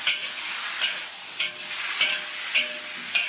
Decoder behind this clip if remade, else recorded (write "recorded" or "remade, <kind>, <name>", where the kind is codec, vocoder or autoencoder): recorded